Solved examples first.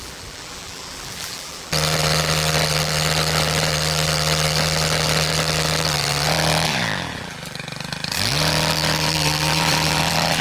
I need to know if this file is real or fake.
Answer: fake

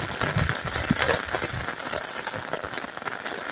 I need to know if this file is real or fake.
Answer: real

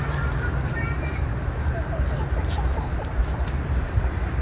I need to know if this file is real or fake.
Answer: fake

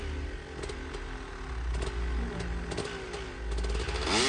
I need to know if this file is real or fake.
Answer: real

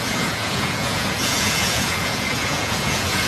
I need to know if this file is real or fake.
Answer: fake